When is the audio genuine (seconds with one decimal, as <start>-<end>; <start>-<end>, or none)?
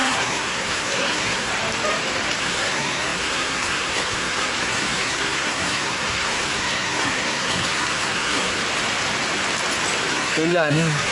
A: 1.5-2.4; 8.6-10.1